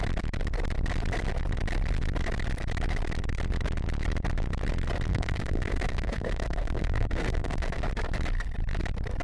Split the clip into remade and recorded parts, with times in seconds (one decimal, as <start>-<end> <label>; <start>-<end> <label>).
0.0-5.1 recorded; 5.1-7.8 remade; 7.8-9.2 recorded